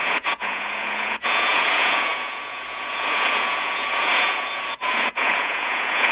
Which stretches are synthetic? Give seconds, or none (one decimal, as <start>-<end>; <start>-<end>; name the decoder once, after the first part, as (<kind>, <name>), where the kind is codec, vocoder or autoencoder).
0.0-6.1 (vocoder, Vocos)